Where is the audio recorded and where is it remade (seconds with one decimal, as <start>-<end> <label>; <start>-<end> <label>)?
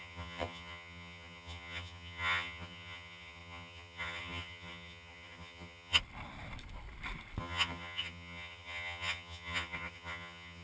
0.0-6.0 remade; 6.0-7.4 recorded; 7.4-10.6 remade